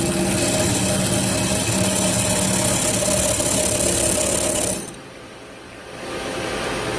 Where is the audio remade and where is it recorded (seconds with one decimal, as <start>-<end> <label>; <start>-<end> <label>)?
0.0-7.0 recorded

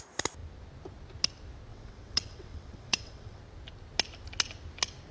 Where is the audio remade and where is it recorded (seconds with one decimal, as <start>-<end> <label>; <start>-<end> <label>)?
0.0-1.7 recorded; 1.7-3.4 remade; 3.4-5.1 recorded